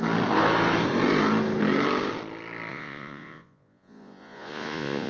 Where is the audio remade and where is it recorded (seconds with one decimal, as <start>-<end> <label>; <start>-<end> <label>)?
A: 0.0-2.7 recorded; 2.7-5.1 remade